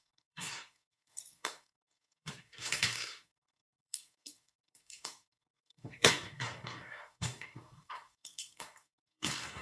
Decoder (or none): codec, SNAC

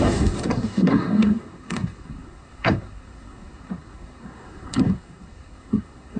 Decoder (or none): codec, SNAC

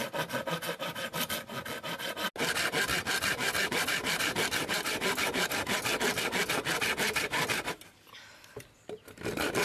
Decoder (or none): none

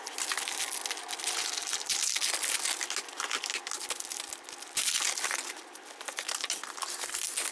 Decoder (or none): none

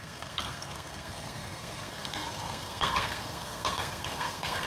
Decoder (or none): codec, SNAC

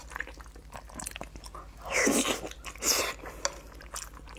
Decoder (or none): none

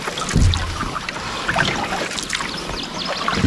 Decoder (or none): none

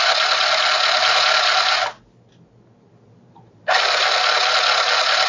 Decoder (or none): none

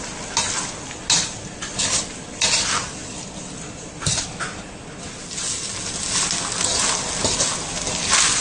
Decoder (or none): none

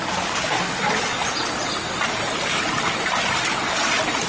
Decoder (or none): none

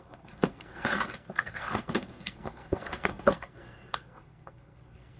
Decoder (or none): codec, SNAC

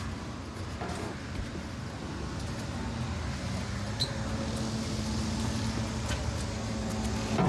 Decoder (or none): none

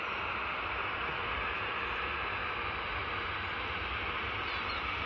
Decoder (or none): none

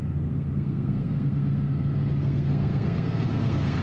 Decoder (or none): codec, SNAC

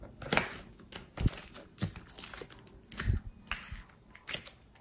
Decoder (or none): none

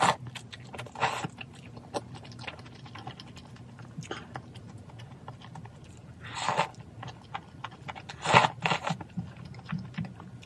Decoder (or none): none